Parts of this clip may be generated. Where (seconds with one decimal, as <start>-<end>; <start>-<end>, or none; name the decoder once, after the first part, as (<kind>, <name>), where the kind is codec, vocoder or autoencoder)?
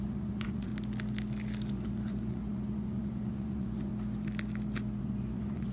0.0-0.7 (vocoder, Vocos); 1.7-3.9; 5.0-5.7